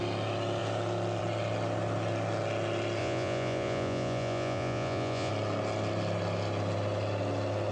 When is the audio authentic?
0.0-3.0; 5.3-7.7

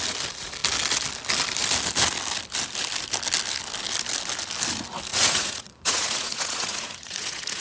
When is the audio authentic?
0.0-5.1

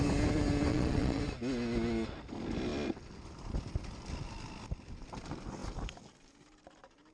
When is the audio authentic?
0.0-0.7; 1.2-7.1